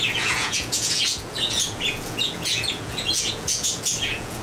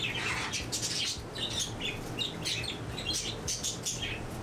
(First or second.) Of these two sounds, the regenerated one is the first